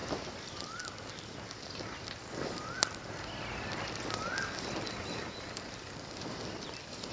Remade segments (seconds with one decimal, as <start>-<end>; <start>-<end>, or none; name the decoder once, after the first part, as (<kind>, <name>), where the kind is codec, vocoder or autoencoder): none